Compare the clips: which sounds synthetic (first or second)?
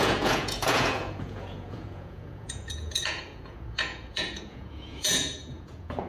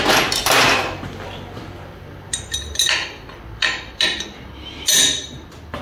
first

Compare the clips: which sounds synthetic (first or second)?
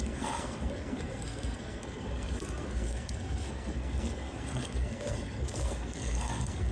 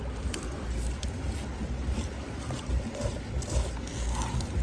first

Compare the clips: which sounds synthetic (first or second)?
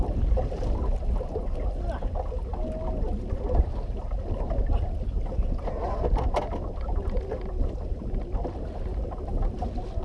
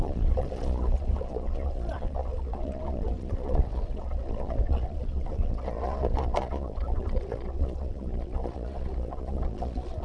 second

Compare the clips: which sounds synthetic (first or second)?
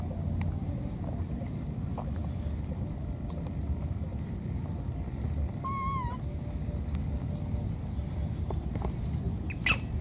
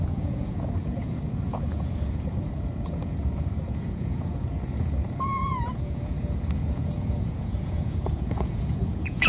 second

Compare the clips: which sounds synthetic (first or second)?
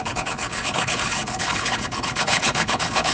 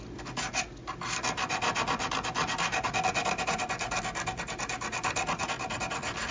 first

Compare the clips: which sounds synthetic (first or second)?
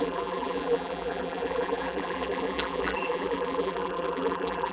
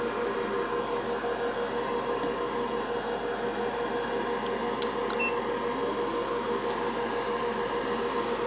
first